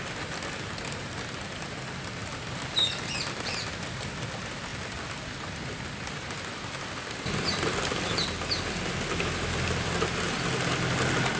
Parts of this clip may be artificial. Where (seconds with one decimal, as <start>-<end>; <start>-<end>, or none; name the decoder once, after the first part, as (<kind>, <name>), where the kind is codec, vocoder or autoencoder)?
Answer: 2.2-4.1 (vocoder, BigVGAN v2); 4.7-8.9